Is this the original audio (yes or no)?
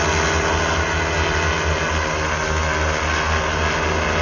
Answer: yes